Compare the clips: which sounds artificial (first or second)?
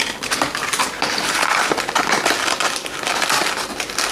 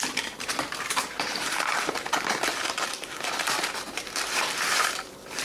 second